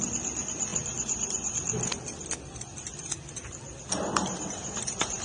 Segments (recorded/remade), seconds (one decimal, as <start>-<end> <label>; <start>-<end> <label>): 0.0-5.2 recorded